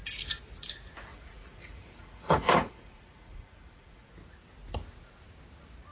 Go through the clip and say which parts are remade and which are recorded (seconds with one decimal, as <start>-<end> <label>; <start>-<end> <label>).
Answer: 0.0-1.1 recorded; 1.1-4.1 remade; 4.1-5.9 recorded